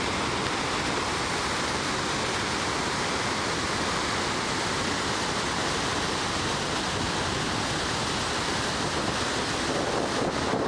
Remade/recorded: recorded